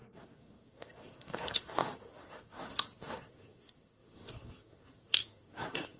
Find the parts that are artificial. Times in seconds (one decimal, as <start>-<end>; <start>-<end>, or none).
0.0-6.0

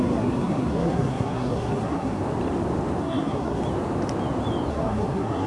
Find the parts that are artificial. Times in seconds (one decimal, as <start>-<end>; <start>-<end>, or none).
0.0-2.2; 3.0-3.6; 4.7-5.5

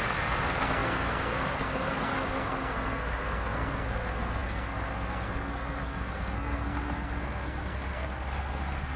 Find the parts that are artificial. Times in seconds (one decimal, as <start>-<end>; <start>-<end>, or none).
0.0-9.0

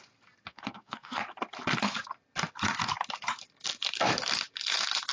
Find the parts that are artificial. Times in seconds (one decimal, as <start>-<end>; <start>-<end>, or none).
0.5-1.2